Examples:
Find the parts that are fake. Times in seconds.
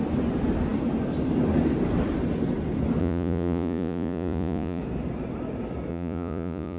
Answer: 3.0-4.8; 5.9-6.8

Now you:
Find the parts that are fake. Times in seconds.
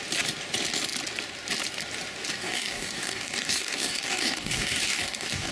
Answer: 2.3-5.5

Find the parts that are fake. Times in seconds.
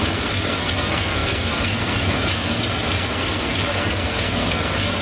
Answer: 0.0-5.0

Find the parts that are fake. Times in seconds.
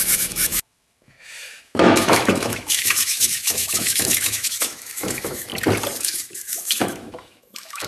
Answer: 0.0-5.5; 6.0-7.9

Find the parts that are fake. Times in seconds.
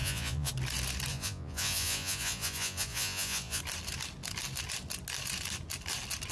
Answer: 0.0-0.5; 1.1-3.6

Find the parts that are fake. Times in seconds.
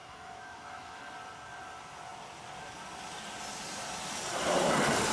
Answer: 0.0-1.0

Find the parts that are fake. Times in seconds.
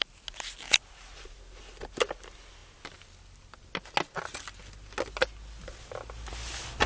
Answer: none